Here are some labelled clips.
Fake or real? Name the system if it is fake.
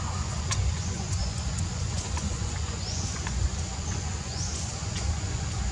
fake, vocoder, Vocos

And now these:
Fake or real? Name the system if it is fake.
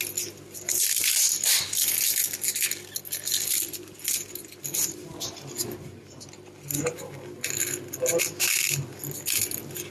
real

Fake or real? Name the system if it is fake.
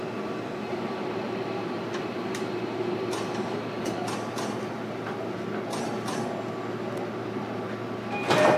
real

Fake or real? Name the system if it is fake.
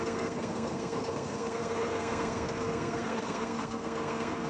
fake, codec, SNAC